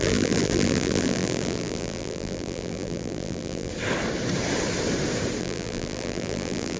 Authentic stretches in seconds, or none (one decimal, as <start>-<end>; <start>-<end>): 3.7-5.4